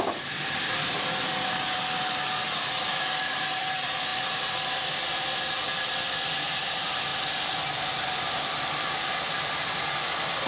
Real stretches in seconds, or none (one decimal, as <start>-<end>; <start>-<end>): none